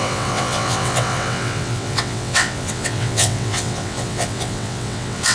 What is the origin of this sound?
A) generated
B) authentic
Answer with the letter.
A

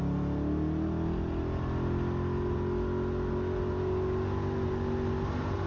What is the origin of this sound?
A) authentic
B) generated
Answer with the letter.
A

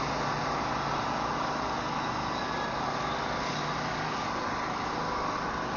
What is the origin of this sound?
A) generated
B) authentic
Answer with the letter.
B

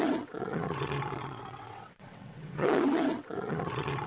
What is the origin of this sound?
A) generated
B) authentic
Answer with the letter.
A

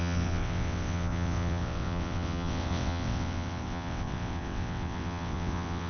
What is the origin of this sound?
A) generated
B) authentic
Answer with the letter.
A